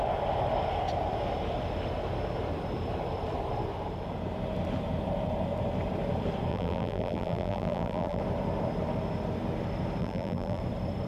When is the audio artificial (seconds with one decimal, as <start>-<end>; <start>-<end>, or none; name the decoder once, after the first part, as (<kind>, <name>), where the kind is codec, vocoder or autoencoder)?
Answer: 6.5-8.2 (vocoder, BigVGAN v2); 10.0-10.6